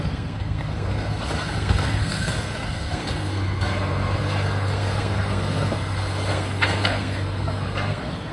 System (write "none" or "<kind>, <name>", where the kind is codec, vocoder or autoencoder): codec, SNAC